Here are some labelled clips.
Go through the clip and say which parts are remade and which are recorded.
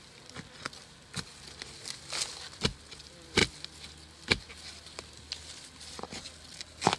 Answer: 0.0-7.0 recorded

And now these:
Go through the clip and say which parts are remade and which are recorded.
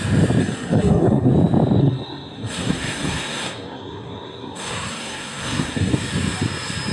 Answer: 0.0-0.4 recorded; 0.4-1.3 remade; 1.3-1.8 recorded; 1.8-5.9 remade; 5.9-6.9 recorded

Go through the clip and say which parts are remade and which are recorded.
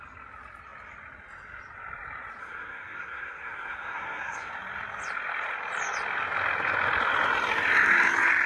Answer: 0.0-2.4 recorded; 2.4-4.5 remade; 4.5-8.5 recorded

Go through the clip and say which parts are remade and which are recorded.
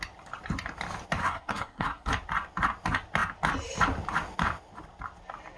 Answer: 0.0-1.2 recorded; 1.2-2.1 remade; 2.1-5.6 recorded